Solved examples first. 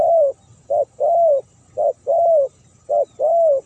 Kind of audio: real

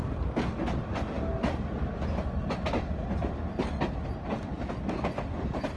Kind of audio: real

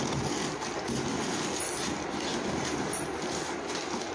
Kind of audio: real